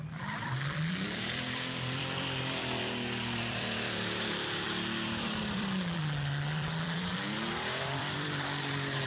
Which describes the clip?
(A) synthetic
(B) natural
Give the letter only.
A